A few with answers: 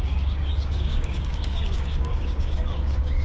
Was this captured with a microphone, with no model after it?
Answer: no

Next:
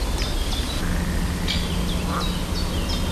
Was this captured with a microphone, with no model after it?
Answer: yes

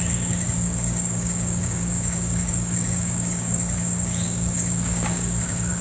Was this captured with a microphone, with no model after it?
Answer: no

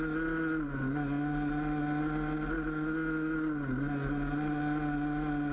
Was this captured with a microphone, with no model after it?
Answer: yes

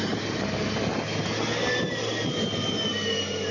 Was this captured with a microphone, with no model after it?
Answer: yes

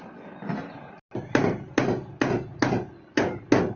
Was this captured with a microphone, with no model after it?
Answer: yes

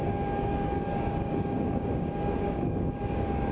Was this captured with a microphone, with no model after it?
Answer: no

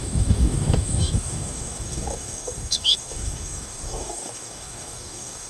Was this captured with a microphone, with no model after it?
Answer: no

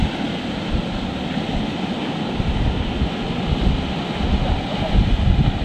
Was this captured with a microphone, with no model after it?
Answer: yes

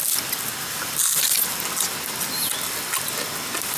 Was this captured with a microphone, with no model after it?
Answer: yes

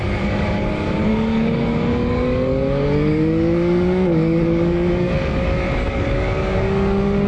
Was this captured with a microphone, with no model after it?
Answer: no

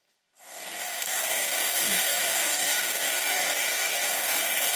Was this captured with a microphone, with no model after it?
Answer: no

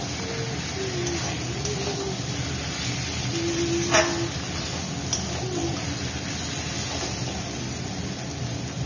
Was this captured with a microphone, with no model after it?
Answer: yes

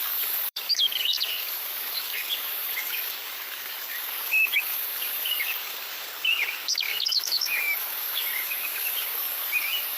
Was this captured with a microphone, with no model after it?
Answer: no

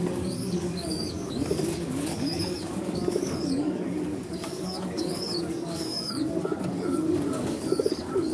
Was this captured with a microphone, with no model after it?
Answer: no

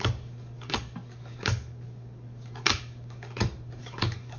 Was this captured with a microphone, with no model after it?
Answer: no